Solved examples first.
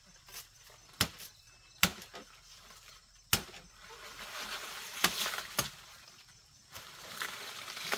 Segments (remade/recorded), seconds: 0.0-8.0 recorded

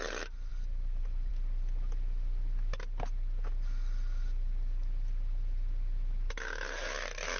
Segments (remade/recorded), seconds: 0.0-7.4 recorded

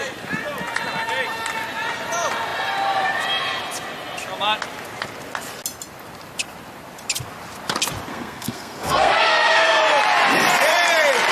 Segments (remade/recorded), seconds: 0.0-8.1 recorded; 8.1-9.8 remade; 9.8-11.3 recorded

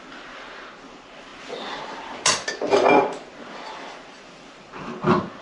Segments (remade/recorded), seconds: 0.0-5.4 recorded

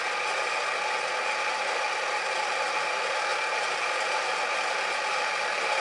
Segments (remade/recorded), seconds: 0.0-5.8 recorded

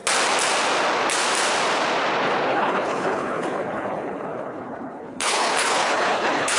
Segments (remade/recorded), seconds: 0.0-2.5 recorded; 2.5-6.6 remade

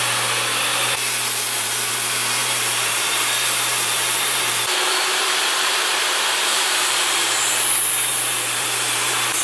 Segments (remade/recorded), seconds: 0.0-0.7 recorded; 0.7-1.9 remade; 1.9-2.4 recorded; 2.4-7.7 remade; 7.7-8.1 recorded; 8.1-9.4 remade